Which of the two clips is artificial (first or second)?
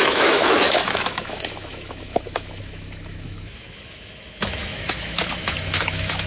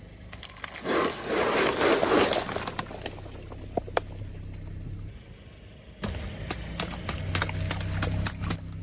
first